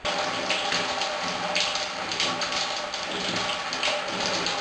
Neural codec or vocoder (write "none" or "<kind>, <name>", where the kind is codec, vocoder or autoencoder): none